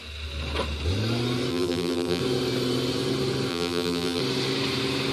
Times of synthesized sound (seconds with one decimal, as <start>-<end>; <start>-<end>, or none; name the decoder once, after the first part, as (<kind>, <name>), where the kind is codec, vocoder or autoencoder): 1.5-2.2 (vocoder, BigVGAN v2); 3.5-4.2